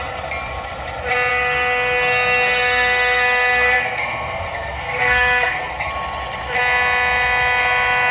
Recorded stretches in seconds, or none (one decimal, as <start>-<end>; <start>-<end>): 0.0-1.3; 5.9-8.1